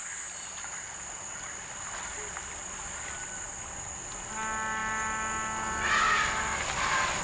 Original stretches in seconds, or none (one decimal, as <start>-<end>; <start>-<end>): 0.0-7.2